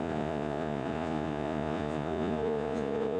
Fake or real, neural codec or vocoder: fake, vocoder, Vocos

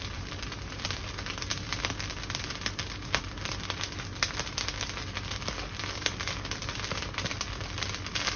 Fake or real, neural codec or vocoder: real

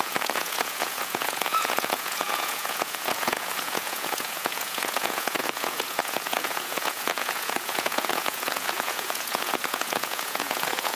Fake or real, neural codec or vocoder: fake, vocoder, Vocos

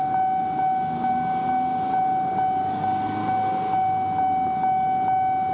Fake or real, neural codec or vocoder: real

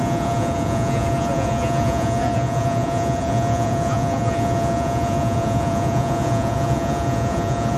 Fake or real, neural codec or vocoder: fake, vocoder, Vocos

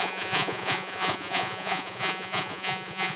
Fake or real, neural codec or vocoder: fake, vocoder, Vocos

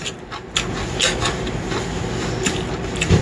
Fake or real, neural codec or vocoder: real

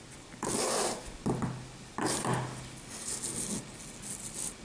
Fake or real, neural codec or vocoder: real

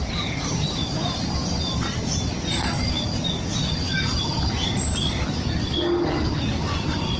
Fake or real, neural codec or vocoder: real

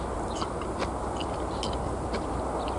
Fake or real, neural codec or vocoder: real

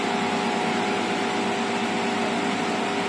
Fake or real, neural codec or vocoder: real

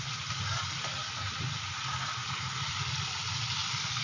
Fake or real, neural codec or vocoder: real